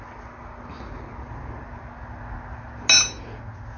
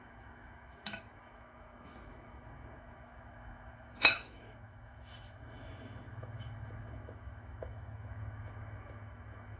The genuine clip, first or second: first